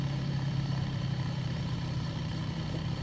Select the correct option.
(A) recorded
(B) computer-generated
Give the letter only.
B